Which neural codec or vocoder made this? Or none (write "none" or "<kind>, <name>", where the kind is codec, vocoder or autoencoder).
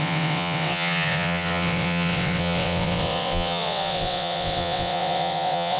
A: vocoder, WaveNeXt